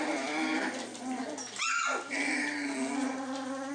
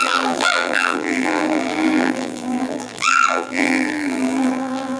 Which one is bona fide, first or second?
first